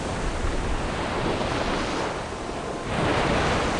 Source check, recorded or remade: recorded